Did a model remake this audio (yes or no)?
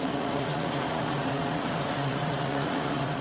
yes